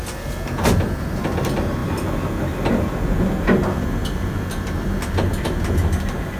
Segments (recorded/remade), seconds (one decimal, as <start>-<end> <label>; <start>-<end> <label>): 0.0-6.4 recorded